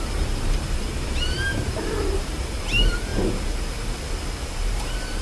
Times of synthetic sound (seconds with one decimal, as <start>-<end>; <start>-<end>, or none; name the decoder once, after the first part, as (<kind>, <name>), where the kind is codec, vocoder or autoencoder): 0.0-3.1 (vocoder, BigVGAN v2); 4.5-5.2